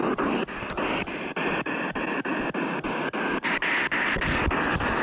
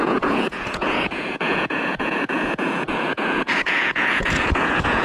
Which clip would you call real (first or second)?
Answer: first